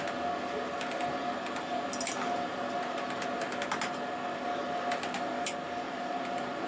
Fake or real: real